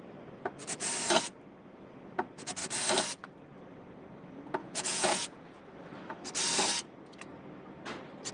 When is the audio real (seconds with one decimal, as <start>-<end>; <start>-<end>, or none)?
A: 0.0-4.6; 5.6-8.3